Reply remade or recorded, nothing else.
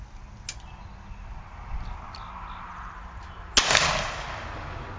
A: recorded